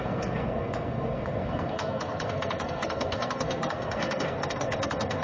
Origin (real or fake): fake